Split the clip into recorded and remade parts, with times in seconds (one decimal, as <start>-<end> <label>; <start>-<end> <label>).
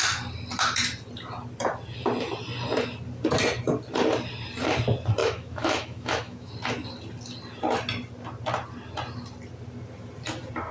0.0-5.2 recorded; 5.2-6.5 remade; 6.5-10.7 recorded